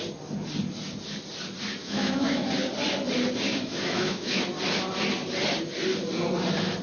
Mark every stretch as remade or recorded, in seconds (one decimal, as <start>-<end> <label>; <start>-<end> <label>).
0.0-1.8 recorded; 1.8-2.5 remade; 2.5-3.5 recorded; 3.5-4.4 remade; 4.4-6.8 recorded